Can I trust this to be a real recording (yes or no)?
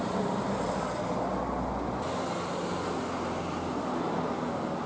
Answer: yes